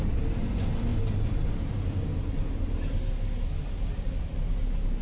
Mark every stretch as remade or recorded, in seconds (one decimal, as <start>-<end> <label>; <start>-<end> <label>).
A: 0.0-0.9 recorded; 0.9-1.7 remade; 1.7-5.0 recorded